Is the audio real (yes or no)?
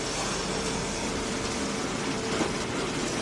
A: yes